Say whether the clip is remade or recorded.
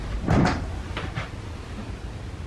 recorded